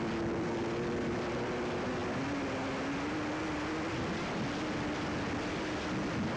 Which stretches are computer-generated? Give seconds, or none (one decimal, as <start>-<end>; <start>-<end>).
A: none